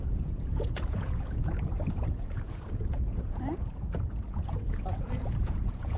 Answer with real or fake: fake